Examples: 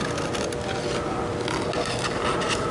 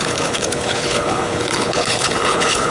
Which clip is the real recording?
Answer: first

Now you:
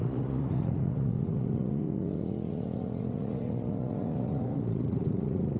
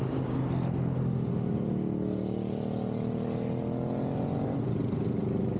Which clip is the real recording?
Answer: second